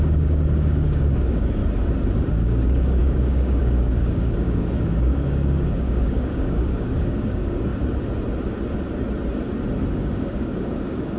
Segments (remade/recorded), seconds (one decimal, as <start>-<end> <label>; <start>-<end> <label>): 0.0-1.6 remade; 1.6-2.3 recorded; 2.3-7.7 remade; 7.7-9.9 recorded; 9.9-11.2 remade